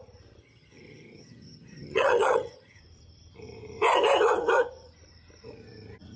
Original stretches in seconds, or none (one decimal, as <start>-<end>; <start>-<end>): 0.0-0.4; 2.8-6.2